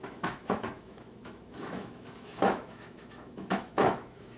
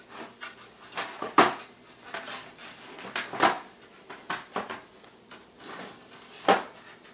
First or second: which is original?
second